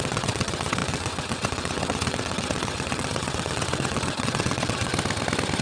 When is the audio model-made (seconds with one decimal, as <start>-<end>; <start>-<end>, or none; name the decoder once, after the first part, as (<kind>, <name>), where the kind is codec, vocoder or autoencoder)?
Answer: 0.0-4.9 (vocoder, WaveNeXt)